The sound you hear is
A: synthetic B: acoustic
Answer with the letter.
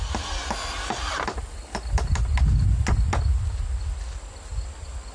B